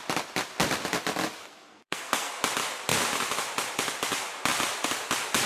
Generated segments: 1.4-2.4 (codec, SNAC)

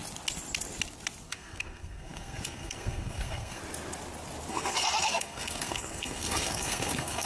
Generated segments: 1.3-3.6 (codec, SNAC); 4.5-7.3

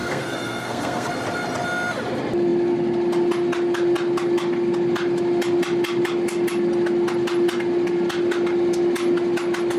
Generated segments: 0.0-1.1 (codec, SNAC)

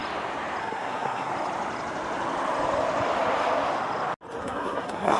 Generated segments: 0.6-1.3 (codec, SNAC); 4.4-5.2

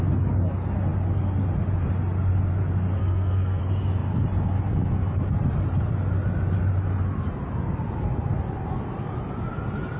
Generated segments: 3.0-3.6 (codec, SNAC)

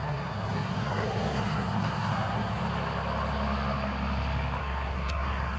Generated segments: 0.0-2.6 (codec, SNAC); 4.6-5.6

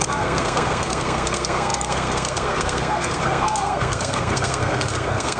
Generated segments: 0.0-5.4 (codec, SNAC)

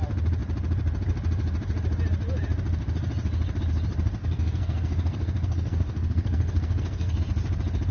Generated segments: 4.2-7.2 (codec, SNAC)